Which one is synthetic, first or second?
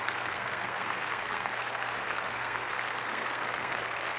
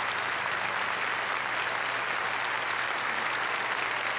first